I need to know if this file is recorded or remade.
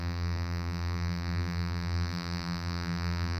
remade